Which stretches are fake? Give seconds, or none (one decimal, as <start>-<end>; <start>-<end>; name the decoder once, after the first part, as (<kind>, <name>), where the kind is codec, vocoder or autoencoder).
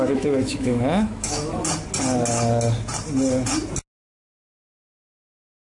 0.0-1.5 (autoencoder, DAC-VAE); 4.9-5.7